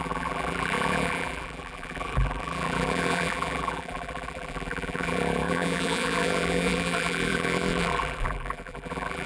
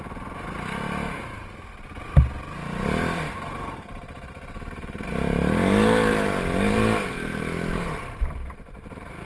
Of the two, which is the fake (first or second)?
first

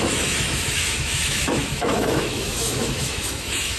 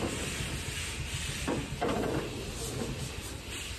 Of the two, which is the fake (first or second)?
first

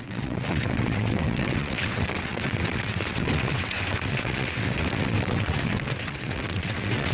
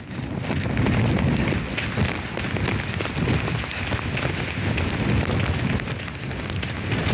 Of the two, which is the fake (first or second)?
first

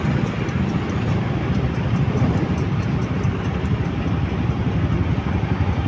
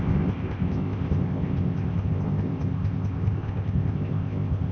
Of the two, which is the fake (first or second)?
second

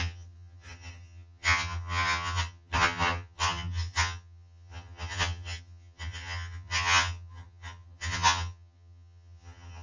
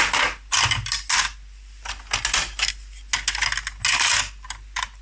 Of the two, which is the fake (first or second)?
first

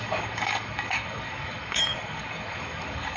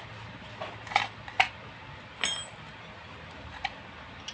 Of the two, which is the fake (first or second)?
first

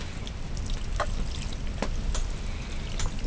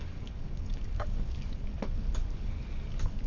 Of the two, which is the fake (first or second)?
second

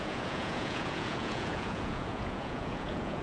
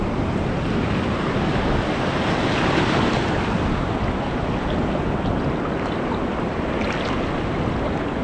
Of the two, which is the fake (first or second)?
first